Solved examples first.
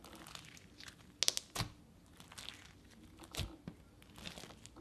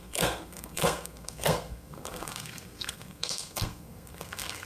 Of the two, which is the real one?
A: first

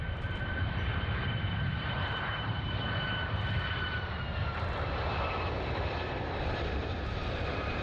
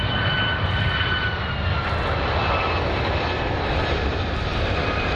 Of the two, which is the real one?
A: second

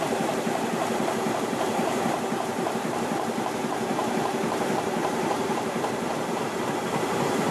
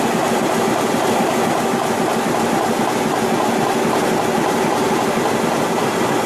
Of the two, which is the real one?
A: second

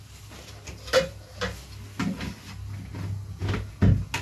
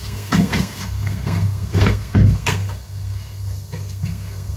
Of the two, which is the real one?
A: first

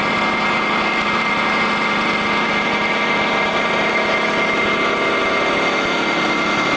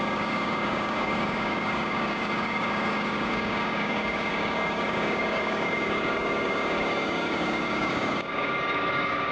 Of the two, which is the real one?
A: first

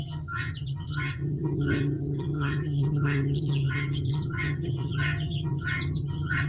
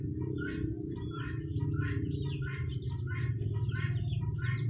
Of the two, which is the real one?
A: second